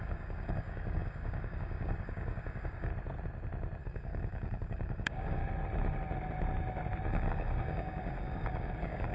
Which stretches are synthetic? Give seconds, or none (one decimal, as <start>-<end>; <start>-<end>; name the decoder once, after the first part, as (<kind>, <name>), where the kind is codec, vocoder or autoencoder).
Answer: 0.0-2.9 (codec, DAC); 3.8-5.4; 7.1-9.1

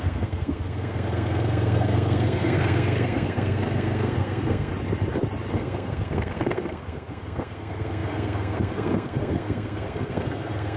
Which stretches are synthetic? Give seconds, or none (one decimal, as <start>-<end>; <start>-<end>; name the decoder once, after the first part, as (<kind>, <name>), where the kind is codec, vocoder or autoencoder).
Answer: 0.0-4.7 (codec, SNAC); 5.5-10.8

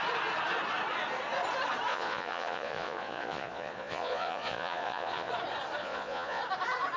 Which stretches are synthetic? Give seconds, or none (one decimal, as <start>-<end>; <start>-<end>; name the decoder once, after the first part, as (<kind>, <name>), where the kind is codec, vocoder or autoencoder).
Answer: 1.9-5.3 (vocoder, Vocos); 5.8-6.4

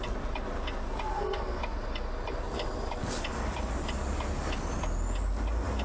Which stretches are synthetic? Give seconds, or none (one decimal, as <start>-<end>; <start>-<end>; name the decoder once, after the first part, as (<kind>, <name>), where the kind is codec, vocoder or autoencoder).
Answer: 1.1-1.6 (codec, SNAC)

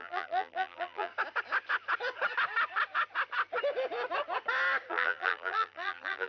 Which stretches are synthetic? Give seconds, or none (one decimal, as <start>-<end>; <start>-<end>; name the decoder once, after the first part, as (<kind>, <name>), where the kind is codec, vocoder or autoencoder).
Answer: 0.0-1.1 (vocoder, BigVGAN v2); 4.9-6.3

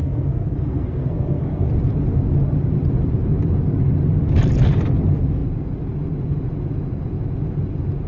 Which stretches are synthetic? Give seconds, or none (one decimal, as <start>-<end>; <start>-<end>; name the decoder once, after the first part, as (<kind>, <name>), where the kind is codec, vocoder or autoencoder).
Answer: 0.0-1.7 (codec, SNAC)